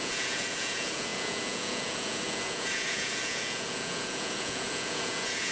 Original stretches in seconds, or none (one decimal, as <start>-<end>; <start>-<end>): none